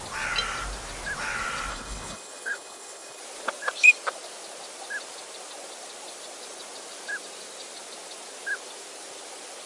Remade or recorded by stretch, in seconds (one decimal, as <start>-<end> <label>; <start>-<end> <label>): 0.0-1.7 recorded; 1.7-3.2 remade; 3.2-9.7 recorded